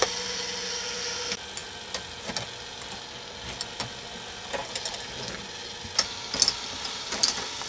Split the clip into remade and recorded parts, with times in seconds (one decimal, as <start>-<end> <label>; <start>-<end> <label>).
0.0-7.7 recorded